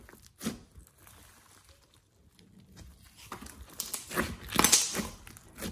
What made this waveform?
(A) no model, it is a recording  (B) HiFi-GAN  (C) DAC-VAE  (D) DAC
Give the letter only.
A